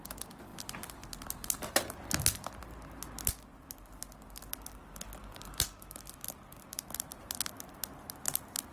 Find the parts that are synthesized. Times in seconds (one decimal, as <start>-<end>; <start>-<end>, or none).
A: 3.5-7.5